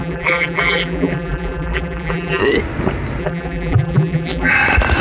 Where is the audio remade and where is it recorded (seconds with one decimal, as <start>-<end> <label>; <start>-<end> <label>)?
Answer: 0.0-2.4 remade; 2.4-3.2 recorded; 3.2-4.5 remade; 4.5-5.0 recorded